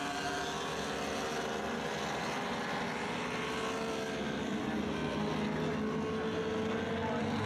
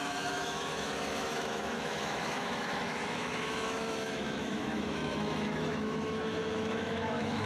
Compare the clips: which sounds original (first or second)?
first